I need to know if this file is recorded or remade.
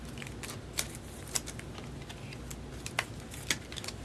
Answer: recorded